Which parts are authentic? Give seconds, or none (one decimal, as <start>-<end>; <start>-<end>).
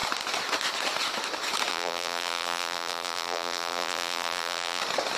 0.0-1.7; 4.8-5.2